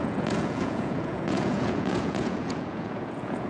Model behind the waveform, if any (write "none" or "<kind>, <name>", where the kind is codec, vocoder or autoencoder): vocoder, Vocos